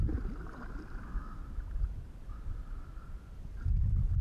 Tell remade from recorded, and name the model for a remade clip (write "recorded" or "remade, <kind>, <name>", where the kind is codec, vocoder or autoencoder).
recorded